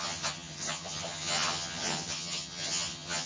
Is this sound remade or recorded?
remade